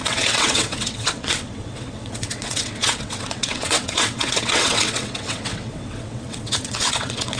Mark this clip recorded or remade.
remade